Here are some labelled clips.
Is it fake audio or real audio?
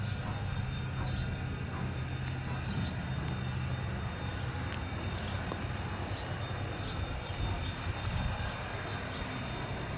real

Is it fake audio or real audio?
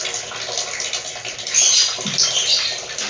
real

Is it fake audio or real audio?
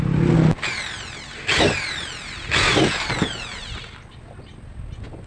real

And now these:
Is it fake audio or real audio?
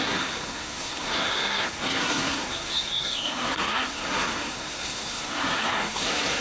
fake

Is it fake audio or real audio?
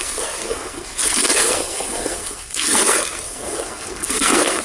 fake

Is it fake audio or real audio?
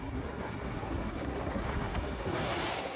fake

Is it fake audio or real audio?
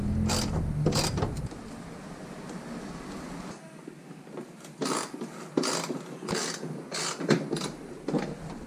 real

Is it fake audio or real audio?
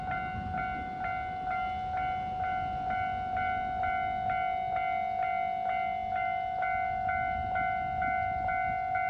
real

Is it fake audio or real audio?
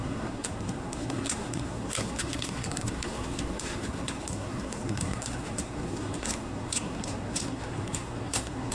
fake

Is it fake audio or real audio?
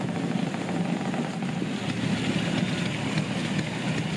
real